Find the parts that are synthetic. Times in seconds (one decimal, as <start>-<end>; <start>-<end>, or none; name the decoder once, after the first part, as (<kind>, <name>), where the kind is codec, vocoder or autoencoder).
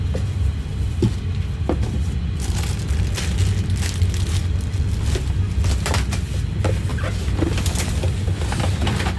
none